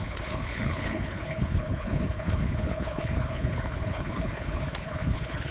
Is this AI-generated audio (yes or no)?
yes